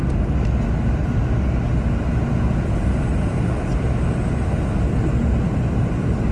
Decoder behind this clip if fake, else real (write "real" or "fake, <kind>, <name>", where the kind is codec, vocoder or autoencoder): real